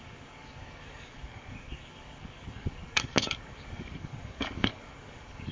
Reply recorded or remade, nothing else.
remade